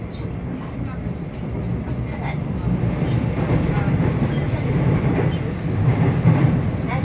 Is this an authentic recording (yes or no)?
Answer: yes